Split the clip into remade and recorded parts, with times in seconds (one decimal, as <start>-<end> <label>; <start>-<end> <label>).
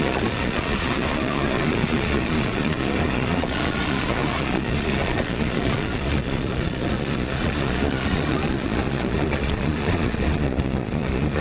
0.0-11.4 remade